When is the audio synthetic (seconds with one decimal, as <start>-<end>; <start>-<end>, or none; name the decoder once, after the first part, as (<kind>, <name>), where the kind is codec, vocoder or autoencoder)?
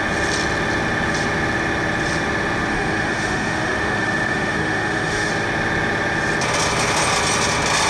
2.7-5.3 (autoencoder, DAC-VAE)